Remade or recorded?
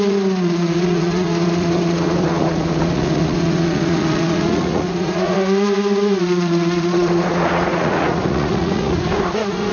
remade